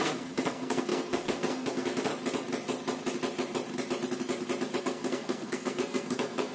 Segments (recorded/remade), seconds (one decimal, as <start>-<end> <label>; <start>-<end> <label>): 0.0-2.1 remade; 2.1-4.8 recorded; 4.8-6.5 remade